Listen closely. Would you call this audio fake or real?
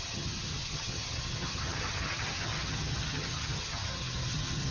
fake